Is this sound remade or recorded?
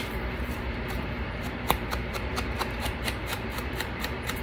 remade